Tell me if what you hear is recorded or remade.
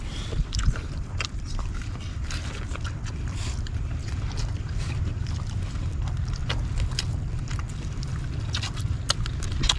remade